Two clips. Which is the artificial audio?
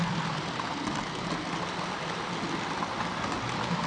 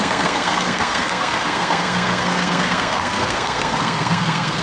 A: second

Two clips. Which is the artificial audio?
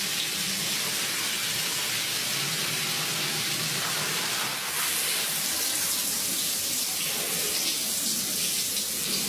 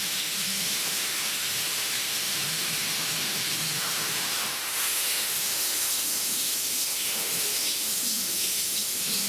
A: second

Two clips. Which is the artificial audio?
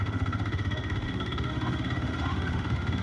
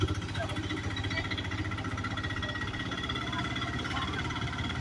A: first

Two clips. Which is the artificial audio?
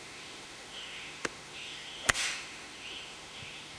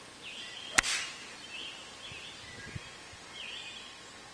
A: first